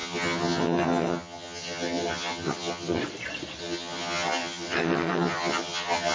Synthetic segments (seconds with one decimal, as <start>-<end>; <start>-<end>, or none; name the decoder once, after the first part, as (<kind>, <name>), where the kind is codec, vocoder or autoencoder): 0.0-3.0 (vocoder, HiFi-GAN); 3.6-6.1